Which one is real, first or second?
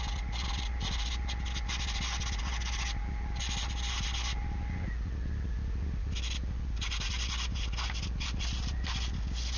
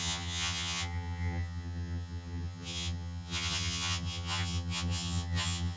first